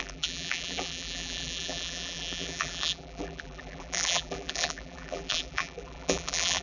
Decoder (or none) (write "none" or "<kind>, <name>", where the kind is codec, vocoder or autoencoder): vocoder, BigVGAN v2